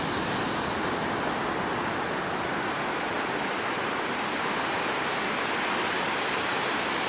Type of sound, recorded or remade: recorded